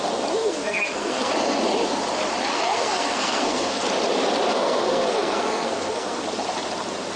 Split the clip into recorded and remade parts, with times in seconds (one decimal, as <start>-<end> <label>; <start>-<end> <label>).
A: 0.0-0.4 recorded; 0.4-1.3 remade; 1.3-2.5 recorded; 2.5-3.8 remade; 3.8-4.5 recorded; 4.5-6.2 remade; 6.2-7.2 recorded